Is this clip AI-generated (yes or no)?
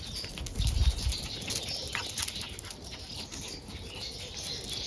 no